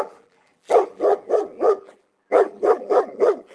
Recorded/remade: remade